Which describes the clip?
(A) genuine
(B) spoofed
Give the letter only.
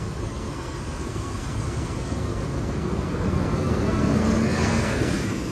B